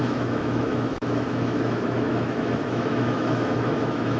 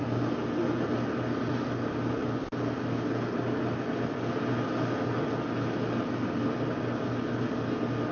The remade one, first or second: first